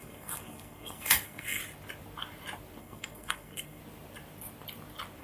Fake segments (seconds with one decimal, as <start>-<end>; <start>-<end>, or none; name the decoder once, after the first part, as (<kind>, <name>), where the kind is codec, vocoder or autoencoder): 0.0-1.6 (codec, SNAC); 2.8-3.8